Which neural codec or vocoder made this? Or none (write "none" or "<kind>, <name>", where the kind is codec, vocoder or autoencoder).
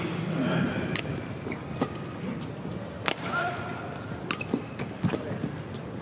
none